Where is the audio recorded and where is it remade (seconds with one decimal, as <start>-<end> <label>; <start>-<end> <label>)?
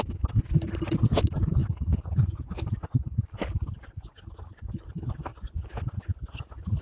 0.0-6.8 recorded